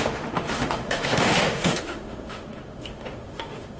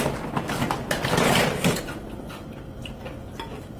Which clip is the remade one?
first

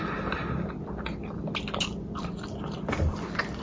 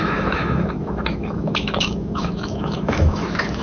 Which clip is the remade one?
second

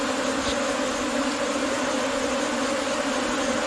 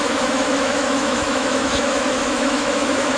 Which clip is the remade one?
second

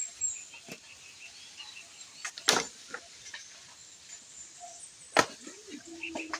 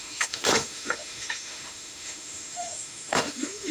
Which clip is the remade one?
second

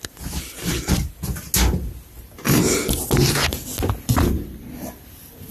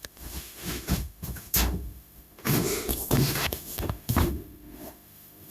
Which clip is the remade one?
second